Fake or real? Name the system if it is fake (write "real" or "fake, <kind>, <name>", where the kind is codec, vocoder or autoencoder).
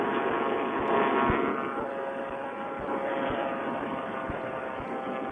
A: real